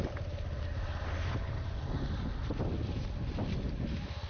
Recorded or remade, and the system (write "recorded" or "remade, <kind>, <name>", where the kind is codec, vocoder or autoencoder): recorded